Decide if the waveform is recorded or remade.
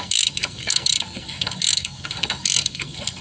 remade